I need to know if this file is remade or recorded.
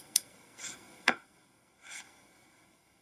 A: remade